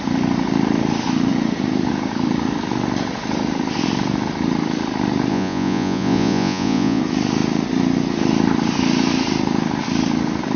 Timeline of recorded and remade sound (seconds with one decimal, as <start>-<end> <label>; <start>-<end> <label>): 0.0-5.3 recorded; 5.3-7.0 remade; 7.0-10.6 recorded